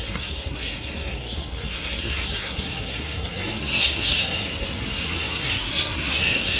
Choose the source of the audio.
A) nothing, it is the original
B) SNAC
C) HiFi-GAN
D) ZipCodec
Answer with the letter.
B